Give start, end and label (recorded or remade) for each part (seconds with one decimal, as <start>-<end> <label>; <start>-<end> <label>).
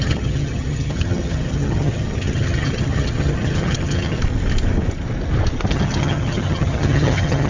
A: 0.0-4.2 remade; 4.2-5.7 recorded; 5.7-7.5 remade